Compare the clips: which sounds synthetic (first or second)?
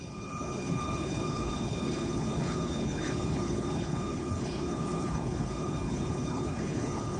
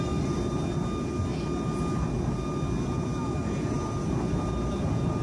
first